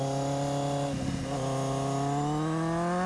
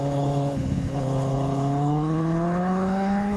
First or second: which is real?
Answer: first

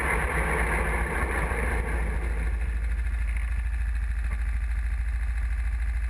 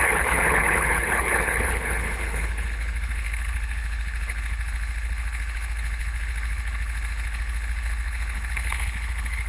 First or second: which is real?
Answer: first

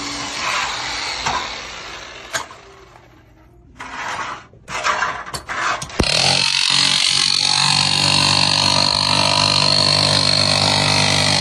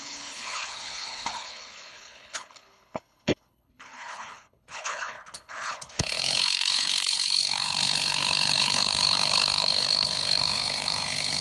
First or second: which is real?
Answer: first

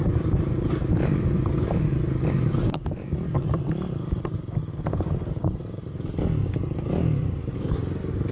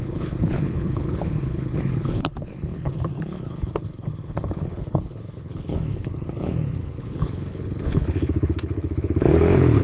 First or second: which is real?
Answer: first